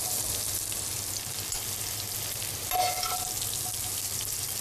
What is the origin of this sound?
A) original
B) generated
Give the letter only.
A